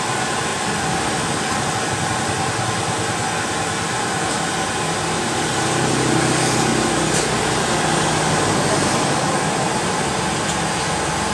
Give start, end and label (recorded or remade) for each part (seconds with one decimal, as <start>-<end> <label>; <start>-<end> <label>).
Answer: 0.0-11.3 recorded